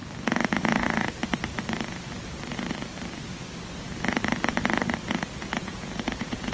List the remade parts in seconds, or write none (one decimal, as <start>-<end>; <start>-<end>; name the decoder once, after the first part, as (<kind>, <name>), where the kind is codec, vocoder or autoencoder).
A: 0.6-1.2 (vocoder, Vocos); 5.1-6.5